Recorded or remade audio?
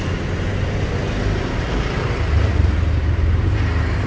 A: recorded